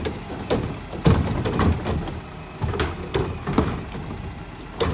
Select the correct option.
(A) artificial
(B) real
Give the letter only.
B